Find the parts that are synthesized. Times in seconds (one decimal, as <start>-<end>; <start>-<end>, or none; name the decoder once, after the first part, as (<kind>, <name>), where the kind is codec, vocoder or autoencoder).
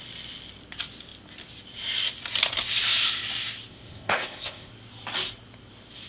3.7-4.7 (codec, ZipCodec)